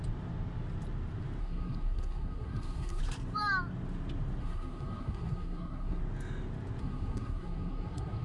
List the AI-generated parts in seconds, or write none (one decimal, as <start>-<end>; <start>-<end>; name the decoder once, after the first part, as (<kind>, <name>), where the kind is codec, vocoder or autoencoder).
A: 1.4-3.0 (codec, SNAC); 4.4-6.0; 6.8-8.2

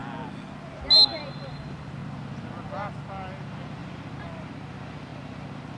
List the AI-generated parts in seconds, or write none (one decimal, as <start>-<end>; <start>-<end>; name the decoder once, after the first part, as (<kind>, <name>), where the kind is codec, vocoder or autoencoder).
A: 3.8-4.5 (vocoder, BigVGAN v2)

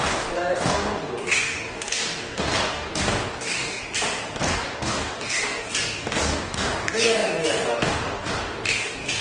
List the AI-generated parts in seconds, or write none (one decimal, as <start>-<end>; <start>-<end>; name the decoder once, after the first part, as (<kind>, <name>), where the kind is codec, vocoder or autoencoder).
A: 0.0-3.8 (codec, DAC); 4.5-9.2

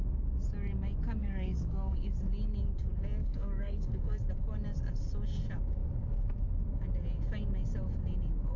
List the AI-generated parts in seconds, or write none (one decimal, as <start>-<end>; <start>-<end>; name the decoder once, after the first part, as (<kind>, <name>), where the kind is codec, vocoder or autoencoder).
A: 1.2-2.0 (codec, DAC); 3.2-4.3

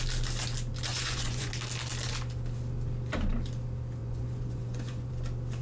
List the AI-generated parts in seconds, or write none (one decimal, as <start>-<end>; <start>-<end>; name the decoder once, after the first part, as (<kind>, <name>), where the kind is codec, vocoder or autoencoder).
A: 0.9-1.5 (vocoder, Vocos); 4.0-5.1

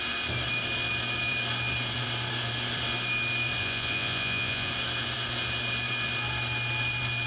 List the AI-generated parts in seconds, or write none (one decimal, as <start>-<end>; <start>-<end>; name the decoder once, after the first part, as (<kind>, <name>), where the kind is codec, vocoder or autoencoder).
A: 3.6-4.7 (vocoder, Vocos)

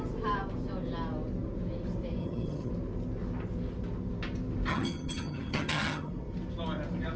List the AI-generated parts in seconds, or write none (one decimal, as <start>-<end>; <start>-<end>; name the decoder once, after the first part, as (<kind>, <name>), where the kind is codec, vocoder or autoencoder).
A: 2.2-2.7 (vocoder, HiFi-GAN); 4.7-6.1